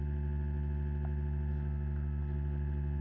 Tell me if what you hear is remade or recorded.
recorded